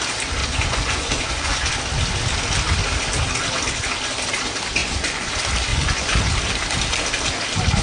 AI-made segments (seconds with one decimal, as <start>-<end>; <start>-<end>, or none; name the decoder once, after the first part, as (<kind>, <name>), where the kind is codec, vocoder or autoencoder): 0.4-1.7 (vocoder, Vocos); 4.8-5.3; 5.7-6.2